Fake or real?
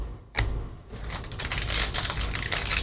real